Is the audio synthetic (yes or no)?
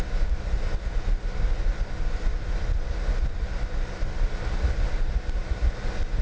no